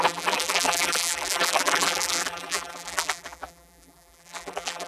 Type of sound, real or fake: fake